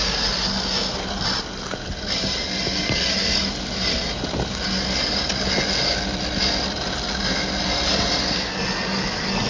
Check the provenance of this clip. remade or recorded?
recorded